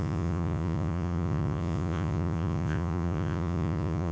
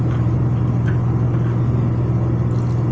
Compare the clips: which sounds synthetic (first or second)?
first